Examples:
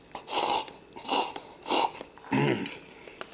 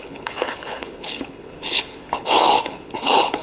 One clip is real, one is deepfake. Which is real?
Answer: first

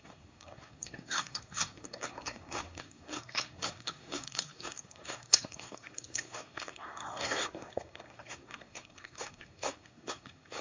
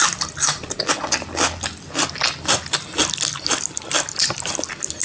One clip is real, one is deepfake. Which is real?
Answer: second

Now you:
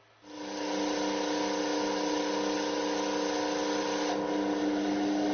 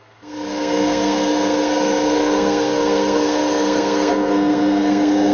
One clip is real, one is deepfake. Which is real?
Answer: first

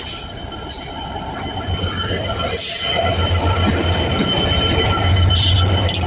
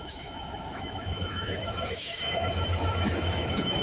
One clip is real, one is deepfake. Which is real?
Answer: first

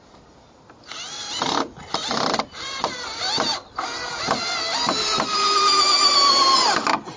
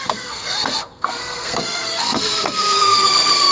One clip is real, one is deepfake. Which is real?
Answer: first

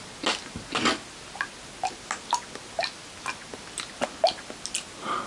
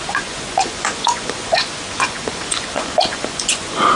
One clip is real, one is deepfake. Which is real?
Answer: first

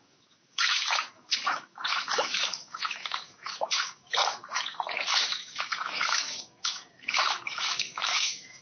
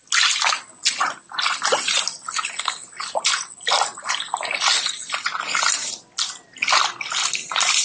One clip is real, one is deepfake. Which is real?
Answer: second